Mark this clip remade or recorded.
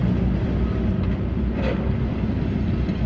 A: recorded